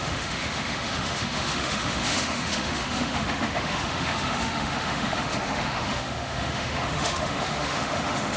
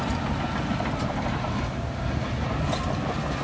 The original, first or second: second